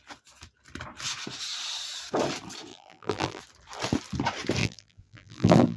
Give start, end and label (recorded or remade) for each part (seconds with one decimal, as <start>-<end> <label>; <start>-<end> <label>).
0.0-2.7 recorded; 2.7-3.4 remade; 3.4-4.6 recorded; 4.6-5.8 remade